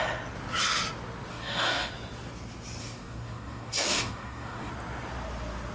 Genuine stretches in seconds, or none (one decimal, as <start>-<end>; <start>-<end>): 0.0-1.3; 1.9-2.8; 4.7-5.7